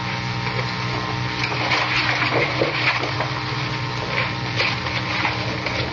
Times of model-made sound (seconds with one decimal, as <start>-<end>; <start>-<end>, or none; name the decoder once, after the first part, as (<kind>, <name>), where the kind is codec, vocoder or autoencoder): none